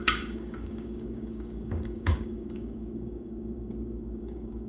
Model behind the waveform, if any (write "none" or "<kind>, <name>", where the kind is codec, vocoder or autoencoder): codec, DAC